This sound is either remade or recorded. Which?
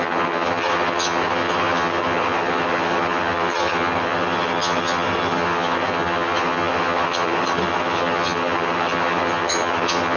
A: remade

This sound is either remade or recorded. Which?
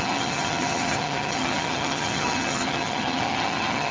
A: remade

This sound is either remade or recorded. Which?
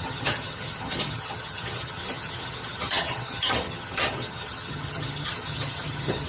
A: remade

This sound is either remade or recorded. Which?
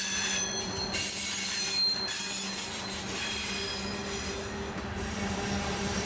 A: recorded